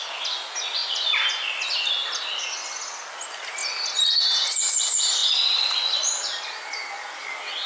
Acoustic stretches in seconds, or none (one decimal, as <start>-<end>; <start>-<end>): 0.0-7.7